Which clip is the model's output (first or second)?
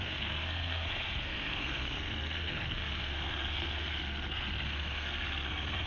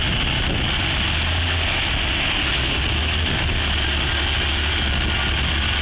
first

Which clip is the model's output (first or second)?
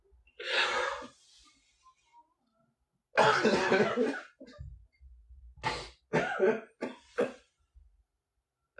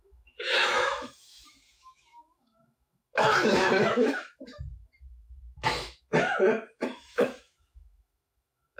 second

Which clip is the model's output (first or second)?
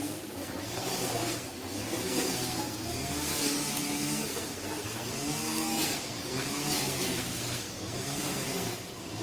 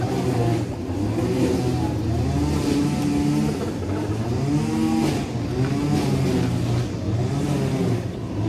first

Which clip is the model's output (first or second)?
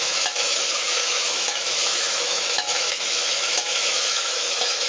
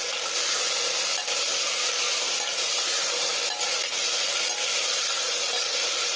first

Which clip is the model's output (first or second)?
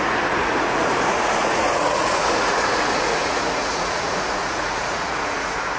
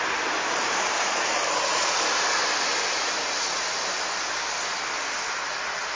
first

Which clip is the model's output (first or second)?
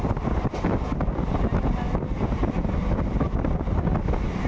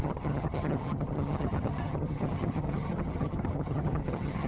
second